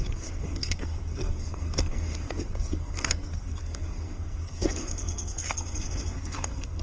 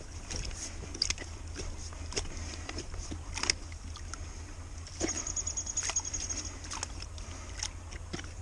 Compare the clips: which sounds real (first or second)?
second